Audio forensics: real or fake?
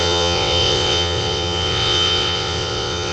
fake